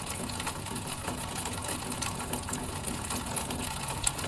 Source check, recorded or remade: remade